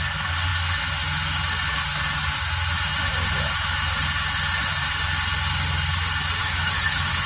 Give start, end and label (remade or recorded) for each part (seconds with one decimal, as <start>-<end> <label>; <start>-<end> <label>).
0.0-6.4 recorded; 6.4-7.3 remade